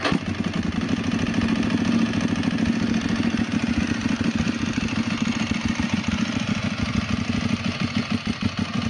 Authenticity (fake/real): real